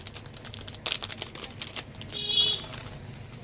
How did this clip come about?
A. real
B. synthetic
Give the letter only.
A